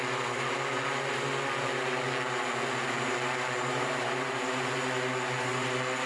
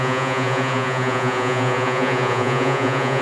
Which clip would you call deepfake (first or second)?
second